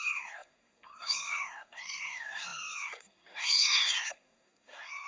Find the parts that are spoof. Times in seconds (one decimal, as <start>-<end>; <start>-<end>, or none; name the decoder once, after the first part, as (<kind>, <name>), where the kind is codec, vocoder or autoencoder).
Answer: 0.0-5.1 (codec, SNAC)